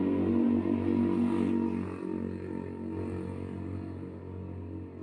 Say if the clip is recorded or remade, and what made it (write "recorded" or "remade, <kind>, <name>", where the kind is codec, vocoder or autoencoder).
recorded